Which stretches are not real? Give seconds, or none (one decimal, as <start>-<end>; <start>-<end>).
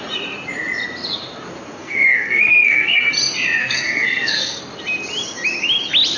1.8-3.1; 3.6-4.6